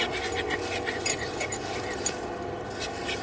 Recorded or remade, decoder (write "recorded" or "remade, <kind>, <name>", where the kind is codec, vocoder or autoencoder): recorded